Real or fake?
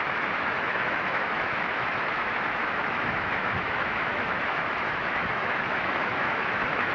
fake